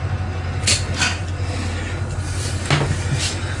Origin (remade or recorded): recorded